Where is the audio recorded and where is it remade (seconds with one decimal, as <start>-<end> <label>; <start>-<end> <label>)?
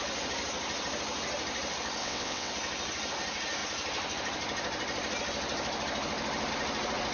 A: 0.0-2.0 recorded; 2.0-2.5 remade; 2.5-7.1 recorded